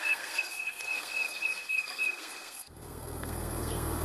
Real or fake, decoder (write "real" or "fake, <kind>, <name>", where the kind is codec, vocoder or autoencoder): fake, codec, SNAC